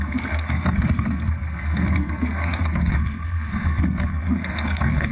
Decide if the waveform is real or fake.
fake